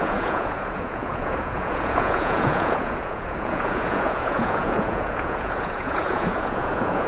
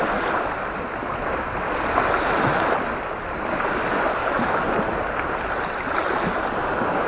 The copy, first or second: first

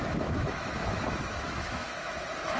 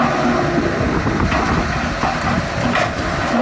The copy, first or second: first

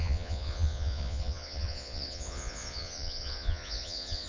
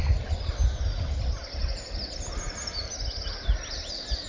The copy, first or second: first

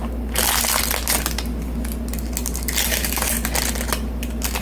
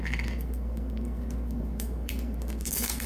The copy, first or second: second